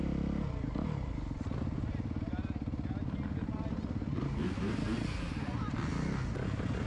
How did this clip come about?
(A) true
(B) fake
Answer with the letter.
A